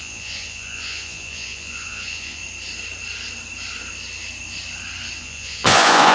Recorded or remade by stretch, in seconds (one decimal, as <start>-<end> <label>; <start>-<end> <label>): 0.0-2.4 remade; 2.4-5.2 recorded; 5.2-6.1 remade